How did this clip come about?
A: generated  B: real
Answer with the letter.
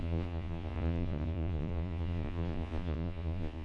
A